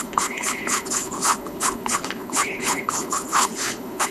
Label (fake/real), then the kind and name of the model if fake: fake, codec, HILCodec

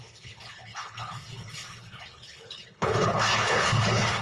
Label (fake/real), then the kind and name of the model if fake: fake, codec, HILCodec